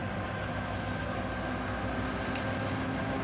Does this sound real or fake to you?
real